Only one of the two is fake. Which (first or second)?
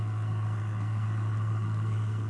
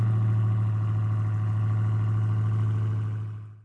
first